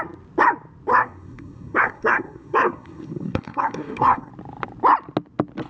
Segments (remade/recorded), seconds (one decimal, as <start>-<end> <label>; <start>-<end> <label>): 0.0-0.9 recorded; 0.9-4.3 remade; 4.3-5.7 recorded